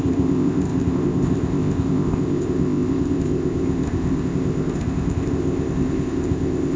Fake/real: fake